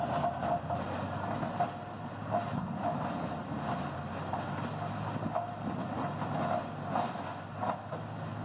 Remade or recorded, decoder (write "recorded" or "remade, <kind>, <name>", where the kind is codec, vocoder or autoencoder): recorded